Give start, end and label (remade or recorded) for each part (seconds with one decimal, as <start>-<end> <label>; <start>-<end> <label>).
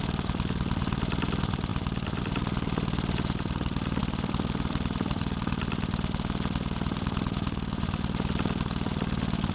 0.0-9.5 remade